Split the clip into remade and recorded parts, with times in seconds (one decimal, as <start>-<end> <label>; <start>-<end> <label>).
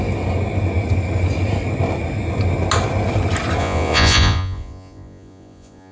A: 0.0-3.6 recorded; 3.6-5.9 remade